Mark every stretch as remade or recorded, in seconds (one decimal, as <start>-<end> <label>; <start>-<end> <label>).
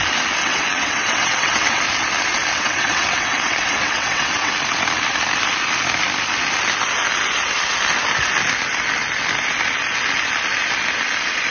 0.0-0.4 recorded; 0.4-1.8 remade; 1.8-2.5 recorded; 2.5-4.5 remade; 4.5-11.5 recorded